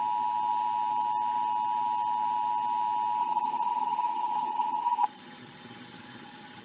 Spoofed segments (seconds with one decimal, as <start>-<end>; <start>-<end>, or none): 3.2-6.6